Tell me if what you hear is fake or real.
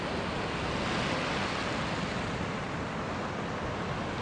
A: real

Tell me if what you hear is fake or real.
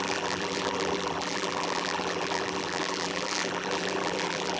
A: fake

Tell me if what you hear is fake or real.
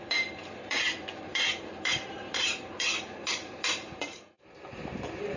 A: fake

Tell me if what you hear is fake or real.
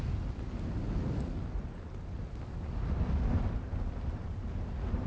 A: real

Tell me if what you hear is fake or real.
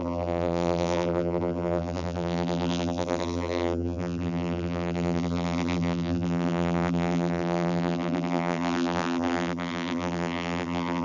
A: fake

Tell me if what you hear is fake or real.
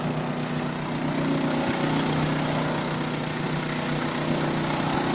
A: real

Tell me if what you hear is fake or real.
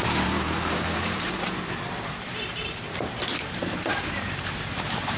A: fake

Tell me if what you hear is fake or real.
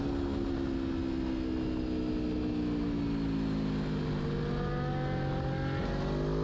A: real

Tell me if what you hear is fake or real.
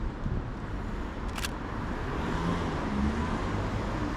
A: real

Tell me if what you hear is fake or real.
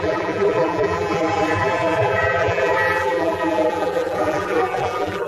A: fake